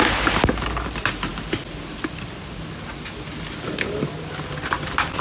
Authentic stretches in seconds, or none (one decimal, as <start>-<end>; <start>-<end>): 0.0-5.2